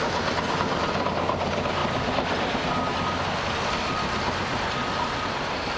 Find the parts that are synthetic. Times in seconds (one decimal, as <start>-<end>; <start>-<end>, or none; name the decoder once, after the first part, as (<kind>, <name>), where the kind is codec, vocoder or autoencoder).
none